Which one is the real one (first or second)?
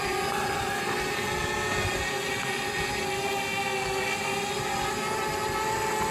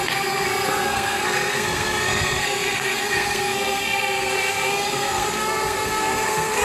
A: first